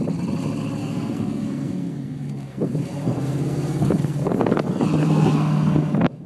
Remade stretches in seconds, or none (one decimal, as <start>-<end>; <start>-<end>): 0.8-4.6; 5.0-6.3